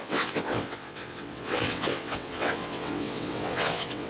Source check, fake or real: fake